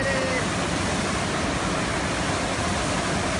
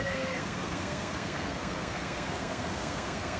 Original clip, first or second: first